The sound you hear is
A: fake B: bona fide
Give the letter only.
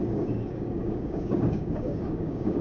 A